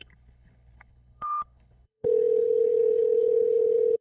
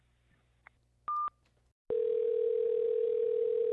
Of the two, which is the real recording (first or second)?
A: second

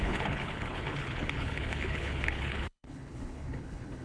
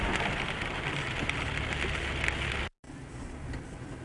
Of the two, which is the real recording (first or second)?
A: second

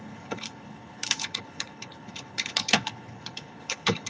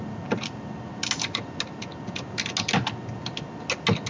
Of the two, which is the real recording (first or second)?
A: second